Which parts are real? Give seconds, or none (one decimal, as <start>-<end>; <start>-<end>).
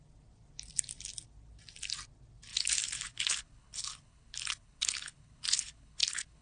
0.0-2.5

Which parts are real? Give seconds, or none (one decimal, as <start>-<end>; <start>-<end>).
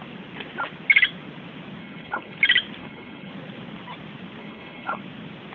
0.0-1.8; 2.4-2.8; 3.3-4.4; 5.0-5.5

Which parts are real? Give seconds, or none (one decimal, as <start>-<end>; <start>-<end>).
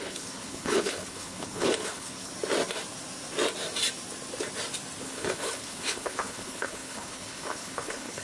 2.3-5.0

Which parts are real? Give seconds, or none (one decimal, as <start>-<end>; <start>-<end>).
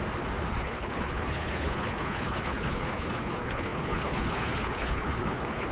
0.0-0.5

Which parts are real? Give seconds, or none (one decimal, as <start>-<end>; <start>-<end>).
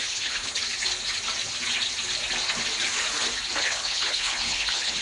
0.6-3.6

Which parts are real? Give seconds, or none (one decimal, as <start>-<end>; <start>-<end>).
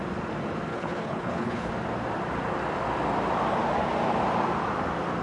0.0-0.7; 1.7-5.2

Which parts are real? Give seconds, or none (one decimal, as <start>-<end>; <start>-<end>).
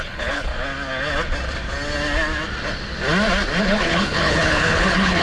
0.5-3.6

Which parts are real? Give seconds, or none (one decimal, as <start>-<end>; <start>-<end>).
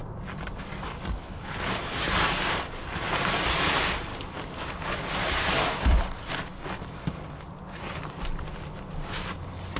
0.0-1.2; 1.7-9.8